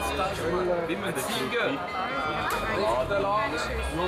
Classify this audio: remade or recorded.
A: recorded